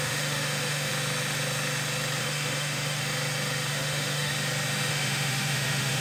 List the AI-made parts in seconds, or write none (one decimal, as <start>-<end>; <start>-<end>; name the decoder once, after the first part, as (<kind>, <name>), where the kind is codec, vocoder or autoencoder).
0.0-0.9 (autoencoder, DAC-VAE); 2.2-3.0; 3.7-4.3; 4.9-6.0